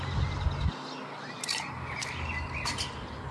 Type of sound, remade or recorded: recorded